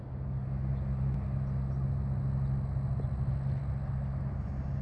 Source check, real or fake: real